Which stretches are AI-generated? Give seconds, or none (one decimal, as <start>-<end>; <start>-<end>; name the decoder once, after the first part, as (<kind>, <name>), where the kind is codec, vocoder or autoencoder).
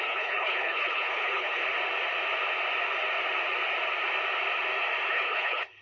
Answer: 0.0-1.6 (codec, HILCodec); 5.1-5.8